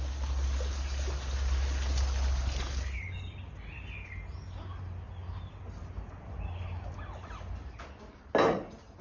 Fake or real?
real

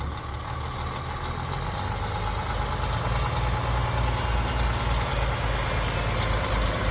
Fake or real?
real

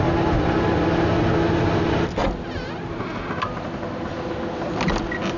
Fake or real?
real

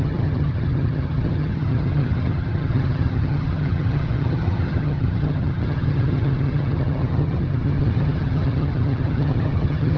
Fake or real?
fake